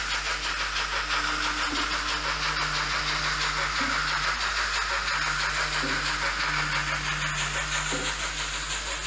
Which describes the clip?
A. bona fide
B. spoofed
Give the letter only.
A